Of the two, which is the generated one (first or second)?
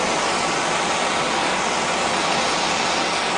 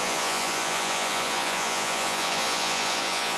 second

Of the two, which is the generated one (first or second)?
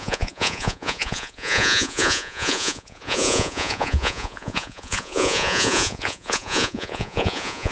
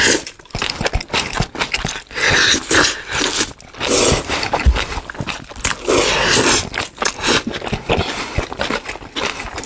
first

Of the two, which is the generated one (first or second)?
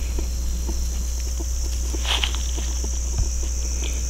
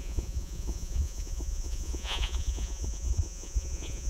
second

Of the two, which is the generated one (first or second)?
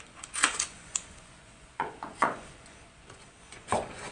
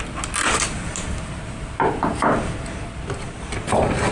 first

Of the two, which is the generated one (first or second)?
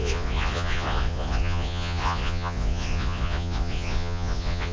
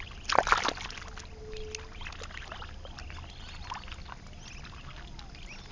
first